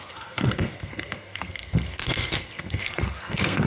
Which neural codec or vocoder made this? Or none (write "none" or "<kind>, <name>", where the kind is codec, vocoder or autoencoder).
codec, SNAC